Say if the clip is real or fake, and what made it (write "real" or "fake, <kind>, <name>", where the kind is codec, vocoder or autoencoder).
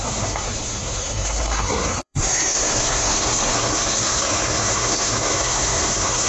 fake, codec, SNAC